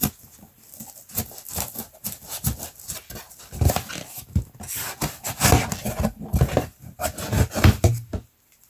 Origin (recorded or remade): recorded